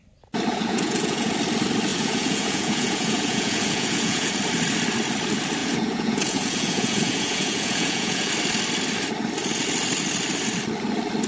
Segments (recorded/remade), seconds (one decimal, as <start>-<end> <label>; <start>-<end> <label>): 0.0-0.5 recorded; 0.5-1.3 remade; 1.3-1.9 recorded; 1.9-4.3 remade; 4.3-5.6 recorded; 5.6-8.3 remade; 8.3-11.3 recorded